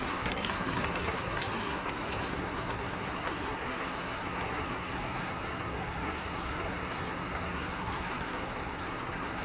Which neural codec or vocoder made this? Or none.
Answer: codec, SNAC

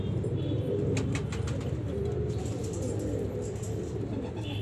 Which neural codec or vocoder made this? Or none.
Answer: none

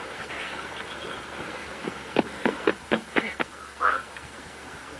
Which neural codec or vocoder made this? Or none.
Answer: codec, SNAC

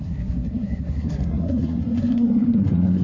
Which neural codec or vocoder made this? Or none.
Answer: codec, SNAC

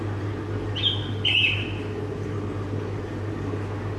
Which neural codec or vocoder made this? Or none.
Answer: none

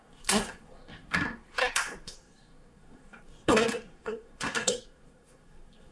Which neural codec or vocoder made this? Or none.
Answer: codec, SNAC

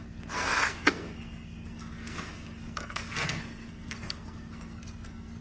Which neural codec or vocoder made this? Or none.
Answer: codec, SNAC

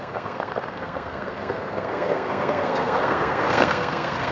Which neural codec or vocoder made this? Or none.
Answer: codec, SNAC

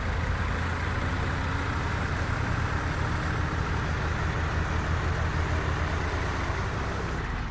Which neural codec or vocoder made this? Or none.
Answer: none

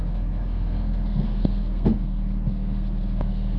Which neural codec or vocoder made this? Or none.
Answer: codec, SNAC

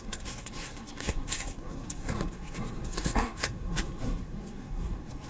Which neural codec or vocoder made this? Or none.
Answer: codec, SNAC